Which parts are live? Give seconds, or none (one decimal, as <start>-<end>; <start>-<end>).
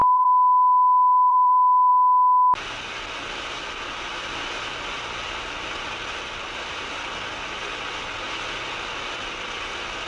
1.9-10.1